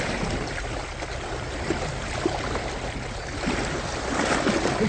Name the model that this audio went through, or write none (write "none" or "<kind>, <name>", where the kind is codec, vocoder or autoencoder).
none